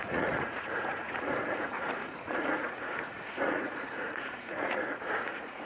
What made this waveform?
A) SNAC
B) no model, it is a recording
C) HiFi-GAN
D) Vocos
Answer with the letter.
D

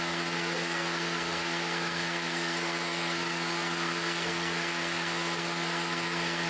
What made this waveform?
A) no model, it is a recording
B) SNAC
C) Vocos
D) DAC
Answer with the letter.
B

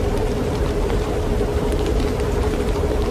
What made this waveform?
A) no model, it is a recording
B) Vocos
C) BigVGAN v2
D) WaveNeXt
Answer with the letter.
C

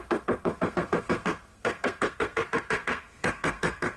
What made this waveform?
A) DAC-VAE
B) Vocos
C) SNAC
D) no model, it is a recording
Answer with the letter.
C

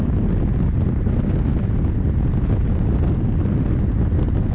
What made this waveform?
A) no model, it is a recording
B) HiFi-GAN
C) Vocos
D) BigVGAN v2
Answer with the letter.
A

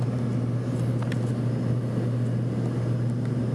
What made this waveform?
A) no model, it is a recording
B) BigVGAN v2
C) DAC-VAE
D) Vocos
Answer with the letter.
B